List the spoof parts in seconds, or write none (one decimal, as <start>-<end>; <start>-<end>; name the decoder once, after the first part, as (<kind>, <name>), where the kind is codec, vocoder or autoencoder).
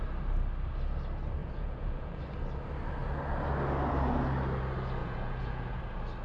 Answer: 1.4-2.2 (vocoder, Vocos); 5.0-5.8